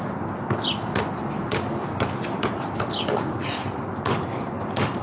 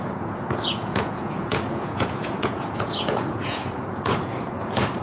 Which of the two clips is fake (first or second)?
second